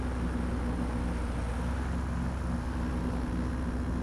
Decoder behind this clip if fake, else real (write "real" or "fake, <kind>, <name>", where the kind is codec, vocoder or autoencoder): real